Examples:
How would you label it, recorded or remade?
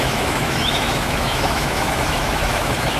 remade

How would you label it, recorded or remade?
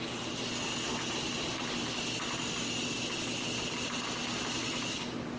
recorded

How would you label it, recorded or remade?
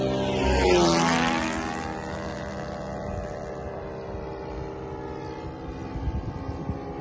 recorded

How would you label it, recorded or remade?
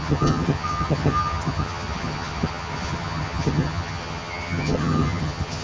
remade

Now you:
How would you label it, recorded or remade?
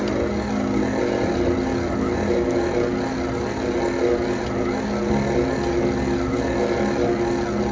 recorded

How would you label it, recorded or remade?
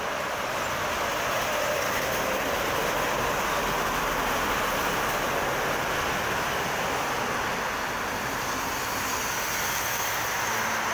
recorded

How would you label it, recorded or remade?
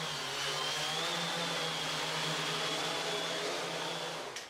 recorded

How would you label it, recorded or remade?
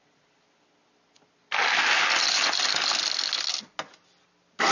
recorded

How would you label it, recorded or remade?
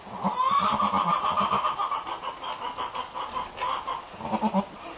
recorded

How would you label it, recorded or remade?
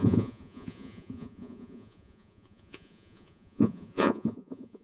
remade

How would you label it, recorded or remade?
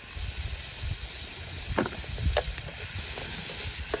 recorded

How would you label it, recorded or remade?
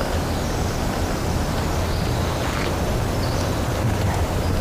recorded